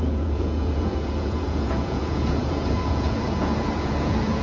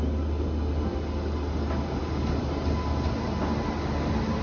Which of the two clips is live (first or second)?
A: second